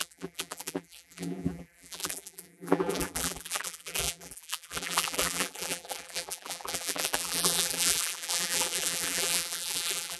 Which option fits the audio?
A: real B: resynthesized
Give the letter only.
B